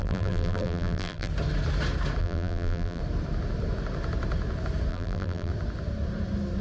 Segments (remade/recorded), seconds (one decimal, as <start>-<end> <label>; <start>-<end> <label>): 0.0-1.3 remade; 1.3-2.2 recorded; 2.2-3.0 remade; 3.0-4.9 recorded; 4.9-5.5 remade; 5.5-6.6 recorded